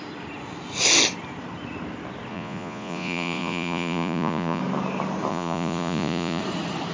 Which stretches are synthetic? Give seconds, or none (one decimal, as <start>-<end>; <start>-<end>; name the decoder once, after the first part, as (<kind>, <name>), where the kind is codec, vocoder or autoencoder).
2.3-4.6 (vocoder, Vocos); 5.3-6.4